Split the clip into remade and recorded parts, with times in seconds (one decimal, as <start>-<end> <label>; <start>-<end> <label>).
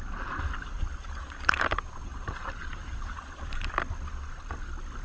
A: 0.0-0.7 recorded; 0.7-3.7 remade; 3.7-5.0 recorded